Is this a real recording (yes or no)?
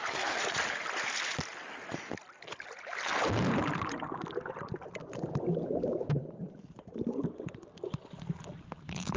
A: yes